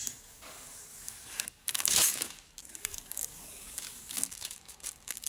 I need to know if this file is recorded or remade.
remade